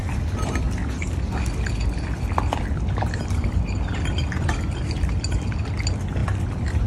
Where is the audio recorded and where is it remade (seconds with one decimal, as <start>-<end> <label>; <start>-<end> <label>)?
0.0-6.9 recorded